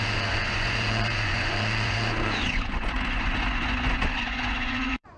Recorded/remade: remade